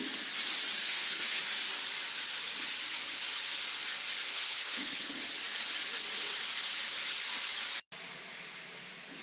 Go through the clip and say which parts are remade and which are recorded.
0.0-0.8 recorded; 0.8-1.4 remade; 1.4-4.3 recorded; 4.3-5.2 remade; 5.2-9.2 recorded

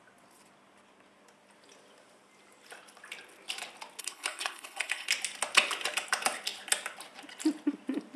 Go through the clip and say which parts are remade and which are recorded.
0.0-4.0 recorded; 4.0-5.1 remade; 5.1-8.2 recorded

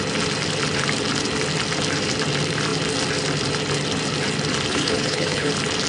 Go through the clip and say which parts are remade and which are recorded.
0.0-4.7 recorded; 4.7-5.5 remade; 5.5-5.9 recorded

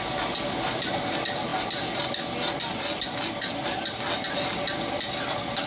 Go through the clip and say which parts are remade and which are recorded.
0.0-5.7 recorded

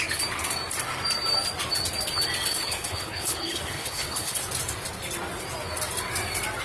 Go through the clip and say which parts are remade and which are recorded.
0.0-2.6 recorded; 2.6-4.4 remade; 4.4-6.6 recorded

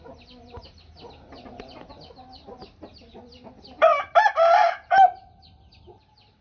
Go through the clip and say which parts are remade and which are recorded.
0.0-6.4 recorded